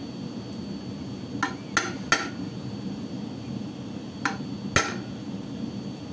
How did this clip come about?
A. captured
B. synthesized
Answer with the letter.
A